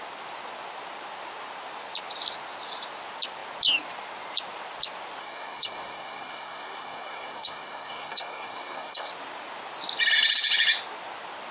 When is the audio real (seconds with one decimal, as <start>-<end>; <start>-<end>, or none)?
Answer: 0.0-5.2; 9.1-11.5